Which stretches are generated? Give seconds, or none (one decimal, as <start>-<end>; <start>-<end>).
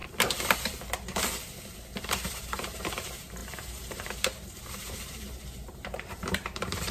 2.3-6.9